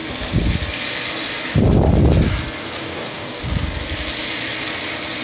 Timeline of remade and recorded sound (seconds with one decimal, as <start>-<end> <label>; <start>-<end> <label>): 0.0-2.8 recorded; 2.8-3.4 remade; 3.4-5.2 recorded